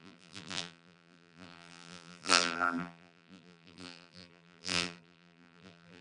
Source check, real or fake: fake